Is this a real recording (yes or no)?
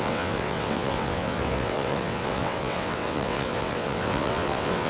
no